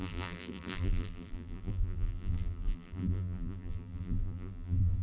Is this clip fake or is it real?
fake